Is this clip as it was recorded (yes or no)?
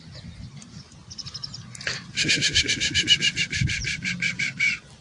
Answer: yes